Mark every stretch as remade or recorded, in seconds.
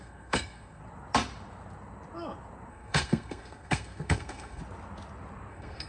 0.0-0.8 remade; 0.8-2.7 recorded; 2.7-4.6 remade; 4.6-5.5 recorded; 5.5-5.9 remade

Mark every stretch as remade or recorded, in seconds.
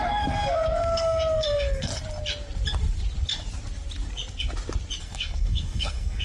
0.0-1.9 remade; 1.9-5.0 recorded; 5.0-6.2 remade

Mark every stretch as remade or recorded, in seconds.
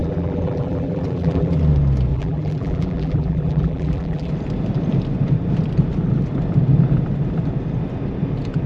0.0-1.6 remade; 1.6-2.1 recorded; 2.1-4.3 remade; 4.3-8.7 recorded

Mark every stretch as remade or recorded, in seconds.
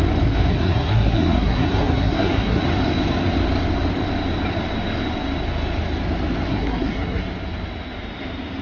0.0-0.5 recorded; 0.5-2.6 remade; 2.6-6.5 recorded; 6.5-7.2 remade; 7.2-8.6 recorded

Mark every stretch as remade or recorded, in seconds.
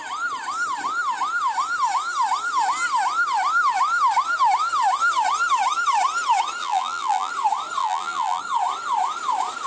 0.0-6.6 recorded; 6.6-7.3 remade; 7.3-7.8 recorded; 7.8-8.4 remade; 8.4-9.7 recorded